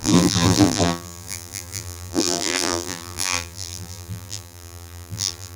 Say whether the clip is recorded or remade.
remade